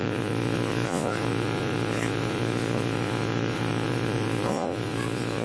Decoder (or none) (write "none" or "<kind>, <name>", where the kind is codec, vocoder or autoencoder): vocoder, Vocos